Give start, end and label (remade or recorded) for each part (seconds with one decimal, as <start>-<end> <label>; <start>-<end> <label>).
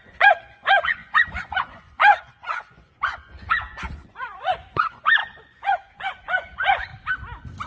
0.0-6.9 remade; 6.9-7.7 recorded